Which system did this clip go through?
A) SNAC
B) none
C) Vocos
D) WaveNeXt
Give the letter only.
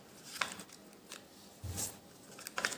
B